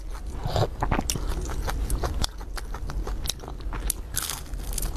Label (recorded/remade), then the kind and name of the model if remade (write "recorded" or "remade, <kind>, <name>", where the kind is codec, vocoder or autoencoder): recorded